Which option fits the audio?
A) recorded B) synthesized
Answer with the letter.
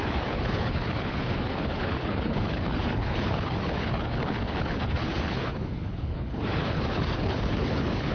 B